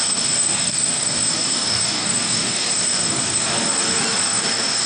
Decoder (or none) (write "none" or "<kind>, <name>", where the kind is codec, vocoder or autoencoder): codec, DAC